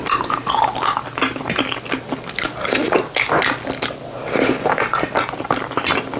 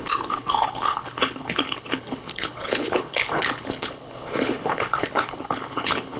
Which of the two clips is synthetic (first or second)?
second